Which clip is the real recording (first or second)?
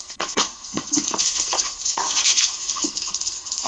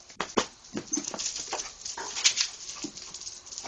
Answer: second